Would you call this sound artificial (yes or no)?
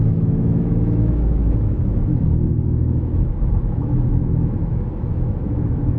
yes